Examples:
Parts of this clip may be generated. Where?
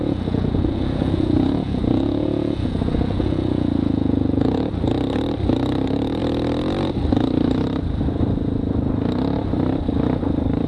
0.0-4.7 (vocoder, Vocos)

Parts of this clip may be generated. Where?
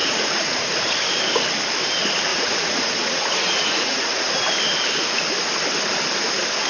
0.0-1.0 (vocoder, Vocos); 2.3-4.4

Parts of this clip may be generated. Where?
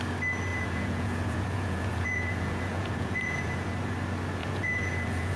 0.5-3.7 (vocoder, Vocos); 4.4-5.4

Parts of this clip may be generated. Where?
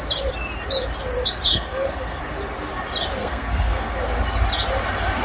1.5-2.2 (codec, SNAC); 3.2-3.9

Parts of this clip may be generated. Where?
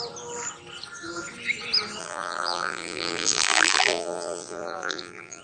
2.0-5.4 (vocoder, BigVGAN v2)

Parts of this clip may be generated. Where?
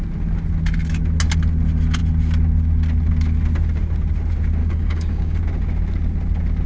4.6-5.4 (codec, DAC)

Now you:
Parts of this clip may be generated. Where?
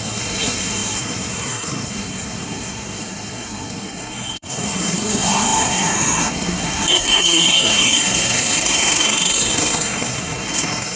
0.0-11.0 (codec, SNAC)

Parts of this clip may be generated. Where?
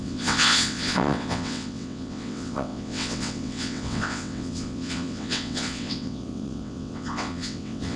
0.0-8.0 (vocoder, WaveNeXt)